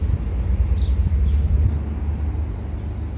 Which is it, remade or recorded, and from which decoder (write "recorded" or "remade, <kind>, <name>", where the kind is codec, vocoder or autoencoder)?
recorded